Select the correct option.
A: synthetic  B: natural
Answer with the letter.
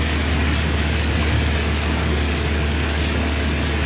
A